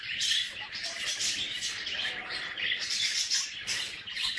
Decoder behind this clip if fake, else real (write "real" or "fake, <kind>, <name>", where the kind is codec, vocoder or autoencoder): fake, vocoder, BigVGAN v2